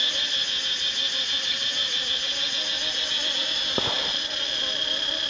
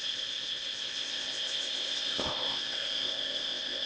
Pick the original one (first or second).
first